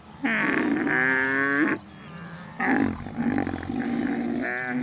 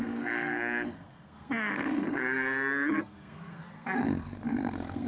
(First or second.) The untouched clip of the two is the first